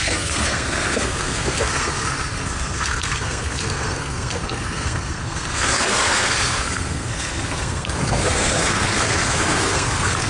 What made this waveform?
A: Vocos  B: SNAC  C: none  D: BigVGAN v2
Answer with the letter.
B